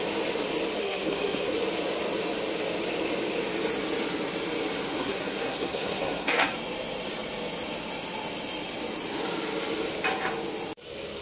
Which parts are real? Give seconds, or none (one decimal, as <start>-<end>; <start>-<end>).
0.0-0.8; 1.5-5.0; 6.5-11.2

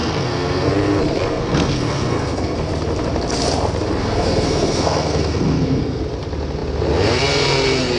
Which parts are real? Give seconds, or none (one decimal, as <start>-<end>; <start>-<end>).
0.7-1.3; 2.7-4.0; 6.0-8.0

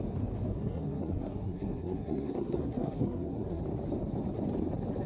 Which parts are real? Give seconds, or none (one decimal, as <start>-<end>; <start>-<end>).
0.0-0.5; 3.6-5.1

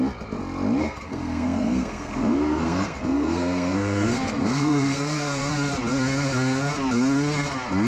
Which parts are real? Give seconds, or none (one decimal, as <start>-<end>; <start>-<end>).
0.0-0.8; 5.5-7.9

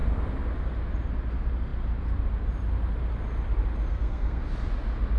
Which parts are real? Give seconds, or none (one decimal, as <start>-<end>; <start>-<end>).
0.0-3.9; 4.4-5.2

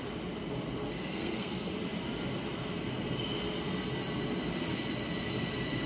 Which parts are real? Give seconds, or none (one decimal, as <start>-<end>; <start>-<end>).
0.0-0.9; 1.7-5.9

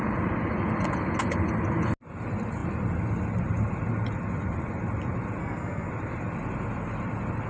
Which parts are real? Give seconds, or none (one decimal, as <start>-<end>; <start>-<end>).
0.0-5.4; 5.9-7.5

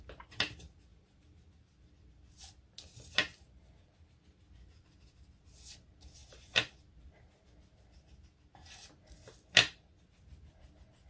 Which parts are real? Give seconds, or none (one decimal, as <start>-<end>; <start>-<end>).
0.0-11.1